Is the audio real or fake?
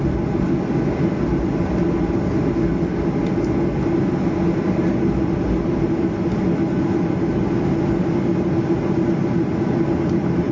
real